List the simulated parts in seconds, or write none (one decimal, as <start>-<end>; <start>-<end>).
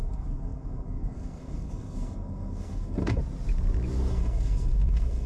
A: 0.0-3.2; 4.1-5.3